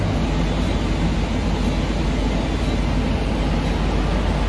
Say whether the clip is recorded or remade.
recorded